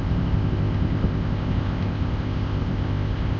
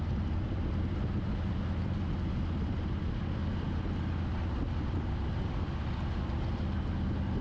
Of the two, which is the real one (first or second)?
second